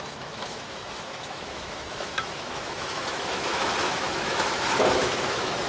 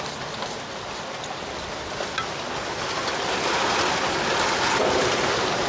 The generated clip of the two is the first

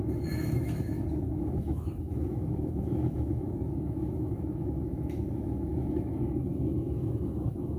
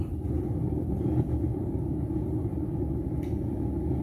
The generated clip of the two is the first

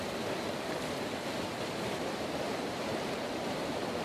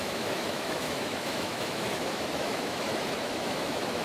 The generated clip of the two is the second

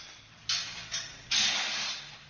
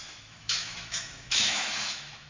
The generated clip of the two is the second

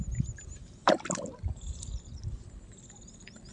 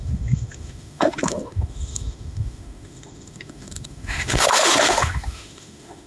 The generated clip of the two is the second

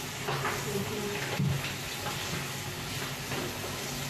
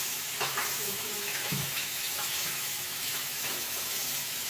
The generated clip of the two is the second